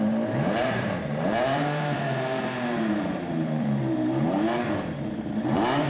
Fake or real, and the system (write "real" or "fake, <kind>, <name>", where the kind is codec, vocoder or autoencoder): fake, vocoder, BigVGAN v2